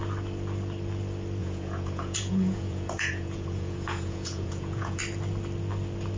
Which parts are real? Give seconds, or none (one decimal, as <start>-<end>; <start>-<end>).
0.0-1.4; 5.0-6.2